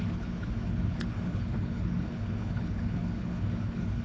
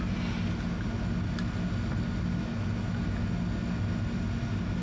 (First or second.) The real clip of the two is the second